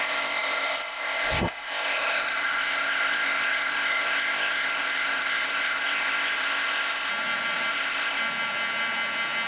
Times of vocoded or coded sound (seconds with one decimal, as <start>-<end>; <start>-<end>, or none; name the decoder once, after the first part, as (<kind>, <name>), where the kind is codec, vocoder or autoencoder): 0.0-7.1 (codec, ZipCodec); 7.7-8.2